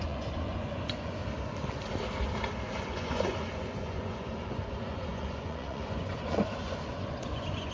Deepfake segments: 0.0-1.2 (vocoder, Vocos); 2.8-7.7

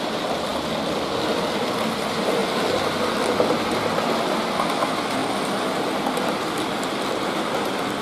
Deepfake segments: none

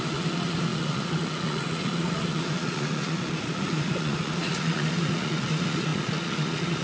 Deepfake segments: 0.0-6.8 (vocoder, Vocos)

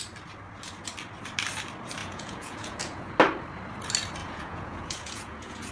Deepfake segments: 2.0-3.1 (vocoder, Vocos); 4.2-5.7

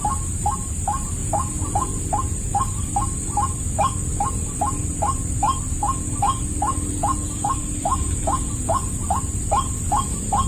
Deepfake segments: 1.2-2.0 (vocoder, Vocos); 6.9-7.5; 7.9-8.9

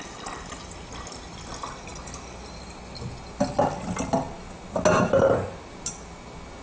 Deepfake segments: none

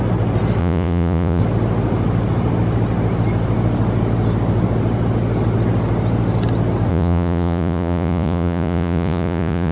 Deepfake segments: 0.6-1.4 (vocoder, Vocos); 6.9-9.7

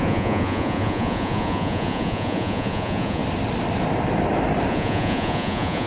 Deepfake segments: 0.0-3.2 (vocoder, Vocos); 4.7-5.9